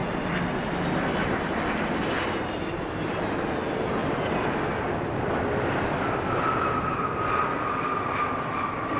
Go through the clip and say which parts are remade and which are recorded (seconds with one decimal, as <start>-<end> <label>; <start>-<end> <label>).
0.0-9.0 recorded